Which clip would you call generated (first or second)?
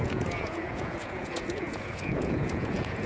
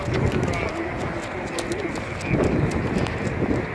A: first